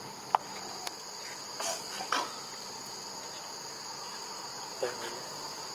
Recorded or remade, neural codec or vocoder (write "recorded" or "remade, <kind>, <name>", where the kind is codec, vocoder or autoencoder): recorded